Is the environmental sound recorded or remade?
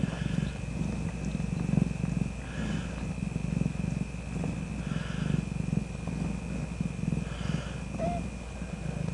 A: recorded